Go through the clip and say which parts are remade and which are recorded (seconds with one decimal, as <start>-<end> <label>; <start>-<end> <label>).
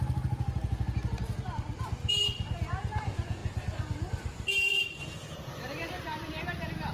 0.0-2.6 recorded; 2.6-3.4 remade; 3.4-4.7 recorded; 4.7-5.5 remade; 5.5-6.9 recorded